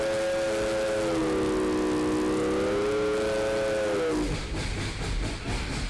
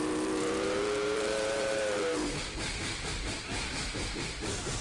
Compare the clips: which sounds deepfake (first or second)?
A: second